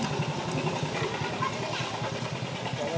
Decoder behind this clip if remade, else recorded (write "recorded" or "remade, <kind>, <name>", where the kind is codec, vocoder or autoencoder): recorded